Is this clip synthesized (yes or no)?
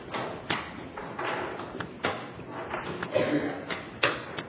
no